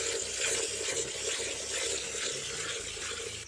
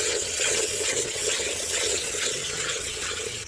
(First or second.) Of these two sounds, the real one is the first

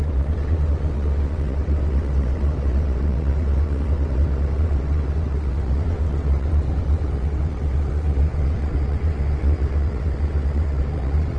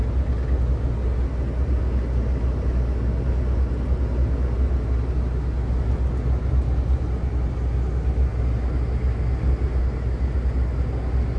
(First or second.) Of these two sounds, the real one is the second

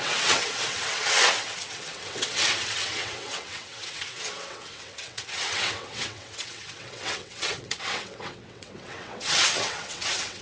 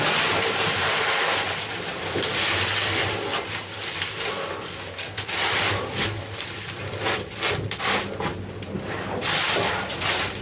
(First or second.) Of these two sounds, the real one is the second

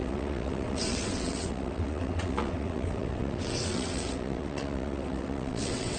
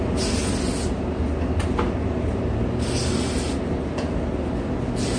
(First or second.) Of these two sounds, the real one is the second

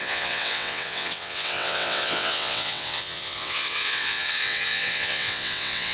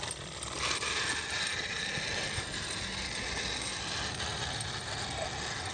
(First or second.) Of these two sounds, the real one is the second